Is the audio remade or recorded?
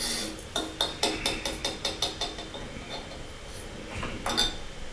recorded